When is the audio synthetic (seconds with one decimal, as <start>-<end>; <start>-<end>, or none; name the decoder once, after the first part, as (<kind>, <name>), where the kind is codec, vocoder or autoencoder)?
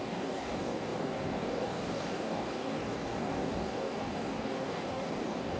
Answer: 0.0-5.6 (codec, DAC)